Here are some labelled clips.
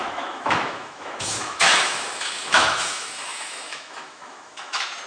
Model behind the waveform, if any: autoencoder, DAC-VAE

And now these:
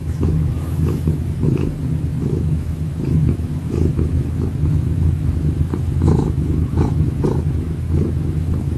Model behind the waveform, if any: autoencoder, DAC-VAE